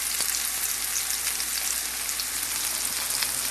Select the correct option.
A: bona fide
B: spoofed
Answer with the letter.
A